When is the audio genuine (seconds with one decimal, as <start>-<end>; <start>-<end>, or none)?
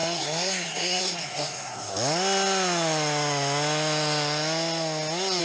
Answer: 1.9-5.4